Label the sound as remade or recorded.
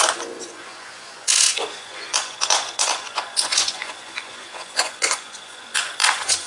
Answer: remade